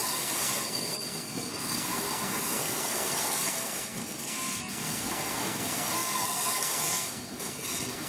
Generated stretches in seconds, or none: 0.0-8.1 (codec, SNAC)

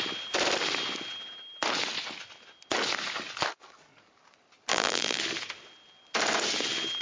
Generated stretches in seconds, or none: 4.7-5.2 (vocoder, BigVGAN v2)